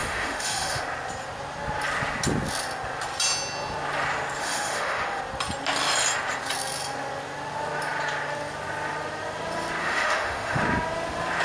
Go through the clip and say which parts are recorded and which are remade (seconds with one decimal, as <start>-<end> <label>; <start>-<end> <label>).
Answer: 0.0-0.8 remade; 0.8-4.4 recorded; 4.4-5.2 remade; 5.2-9.8 recorded; 9.8-10.6 remade; 10.6-11.4 recorded